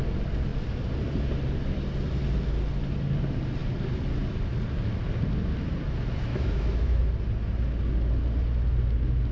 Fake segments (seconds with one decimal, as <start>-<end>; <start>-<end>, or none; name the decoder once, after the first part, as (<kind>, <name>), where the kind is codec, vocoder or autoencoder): 6.3-7.0 (autoencoder, DAC-VAE)